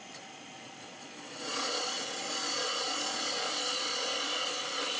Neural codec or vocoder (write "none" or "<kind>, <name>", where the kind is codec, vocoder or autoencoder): vocoder, Vocos